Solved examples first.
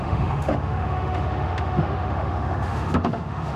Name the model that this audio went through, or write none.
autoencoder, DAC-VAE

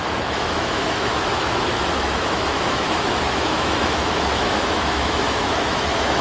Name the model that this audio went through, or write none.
autoencoder, DAC-VAE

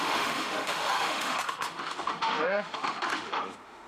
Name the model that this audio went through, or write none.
autoencoder, DAC-VAE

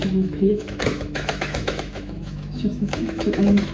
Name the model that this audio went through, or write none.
autoencoder, DAC-VAE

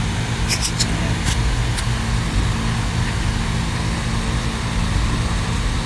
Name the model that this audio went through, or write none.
none